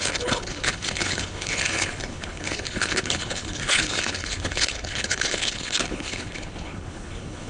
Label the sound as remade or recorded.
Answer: remade